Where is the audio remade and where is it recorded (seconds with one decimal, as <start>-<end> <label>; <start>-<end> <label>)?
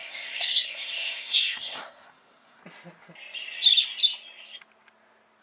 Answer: 0.0-2.6 remade; 2.6-5.4 recorded